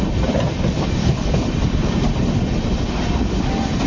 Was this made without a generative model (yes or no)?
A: no